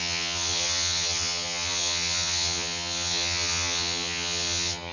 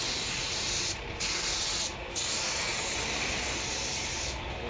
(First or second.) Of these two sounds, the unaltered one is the second